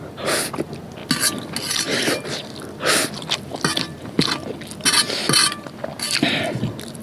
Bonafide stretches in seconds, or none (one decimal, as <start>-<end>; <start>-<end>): 0.0-7.0